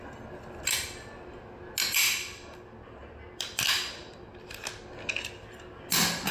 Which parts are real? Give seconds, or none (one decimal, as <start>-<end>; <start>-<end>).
0.0-6.3